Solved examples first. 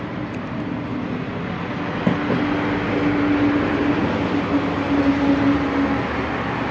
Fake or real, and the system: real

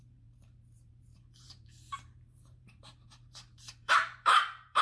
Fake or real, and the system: fake, vocoder, BigVGAN v2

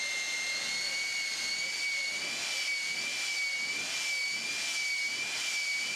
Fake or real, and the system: real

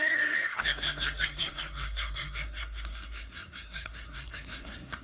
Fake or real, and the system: fake, codec, SNAC